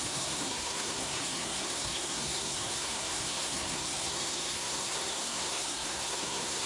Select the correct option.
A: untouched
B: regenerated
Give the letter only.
B